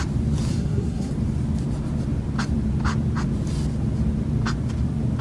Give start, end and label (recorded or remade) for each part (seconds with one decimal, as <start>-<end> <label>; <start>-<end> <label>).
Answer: 0.0-0.5 recorded; 0.5-1.1 remade; 1.1-5.2 recorded